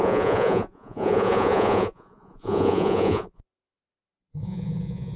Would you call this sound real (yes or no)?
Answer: no